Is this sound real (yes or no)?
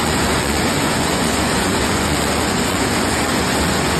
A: no